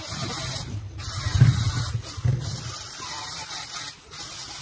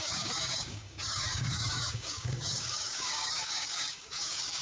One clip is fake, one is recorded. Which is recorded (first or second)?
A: first